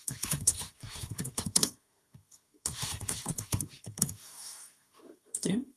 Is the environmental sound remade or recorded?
remade